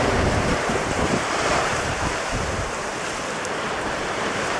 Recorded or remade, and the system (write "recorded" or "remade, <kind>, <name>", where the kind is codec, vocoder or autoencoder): remade, vocoder, BigVGAN v2